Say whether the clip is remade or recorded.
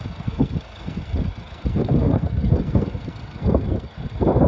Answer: remade